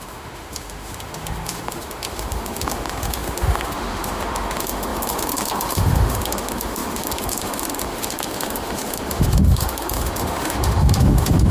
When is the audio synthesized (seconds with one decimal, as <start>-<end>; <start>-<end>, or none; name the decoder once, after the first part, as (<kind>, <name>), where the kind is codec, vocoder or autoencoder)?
0.0-11.5 (autoencoder, DAC-VAE)